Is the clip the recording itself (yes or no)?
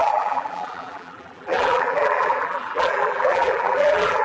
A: no